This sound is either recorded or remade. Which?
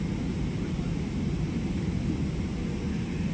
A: recorded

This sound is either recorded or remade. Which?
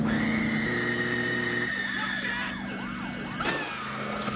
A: recorded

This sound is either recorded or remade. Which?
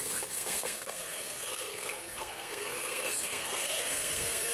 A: remade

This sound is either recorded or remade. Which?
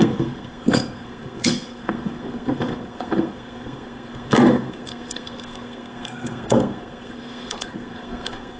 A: remade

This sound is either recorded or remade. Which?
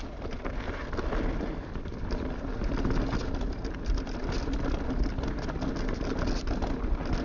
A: recorded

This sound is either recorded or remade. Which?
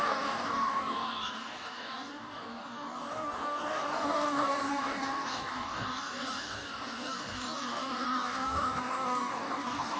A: remade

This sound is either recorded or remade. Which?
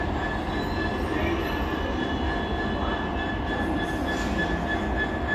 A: recorded